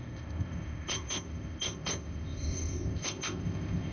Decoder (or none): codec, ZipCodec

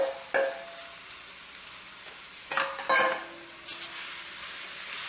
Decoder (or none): none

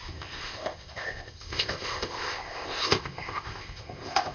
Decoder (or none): codec, ZipCodec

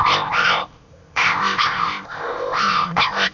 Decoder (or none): codec, ZipCodec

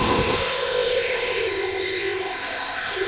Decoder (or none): codec, ZipCodec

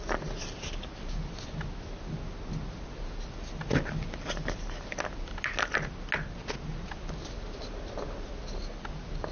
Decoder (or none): none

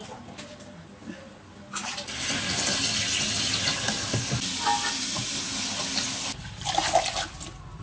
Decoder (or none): none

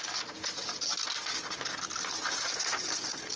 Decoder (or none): none